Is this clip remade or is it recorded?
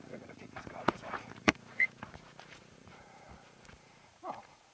remade